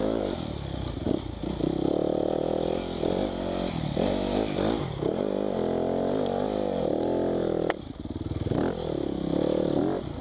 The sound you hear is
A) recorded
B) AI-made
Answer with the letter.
A